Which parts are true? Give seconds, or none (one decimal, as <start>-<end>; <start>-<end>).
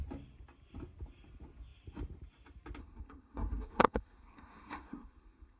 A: 0.0-2.8